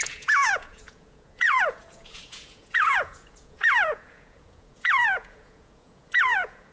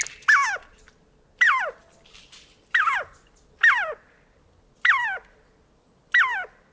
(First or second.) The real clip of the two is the second